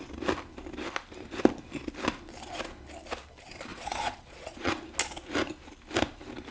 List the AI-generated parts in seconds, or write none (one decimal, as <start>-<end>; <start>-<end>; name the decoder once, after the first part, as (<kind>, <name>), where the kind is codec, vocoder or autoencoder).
3.7-4.7 (vocoder, Vocos)